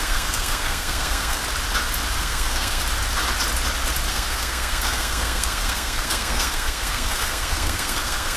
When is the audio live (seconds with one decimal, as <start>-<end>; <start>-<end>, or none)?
1.4-2.2; 2.8-4.1